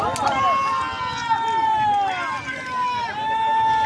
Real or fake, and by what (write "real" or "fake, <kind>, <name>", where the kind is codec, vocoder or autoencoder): real